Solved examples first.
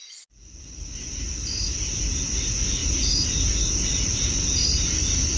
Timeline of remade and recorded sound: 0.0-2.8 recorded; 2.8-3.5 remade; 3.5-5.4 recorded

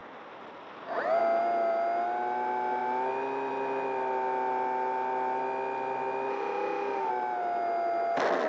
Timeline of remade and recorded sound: 0.0-6.3 recorded; 6.3-7.1 remade; 7.1-8.5 recorded